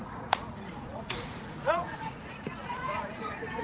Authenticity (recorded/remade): remade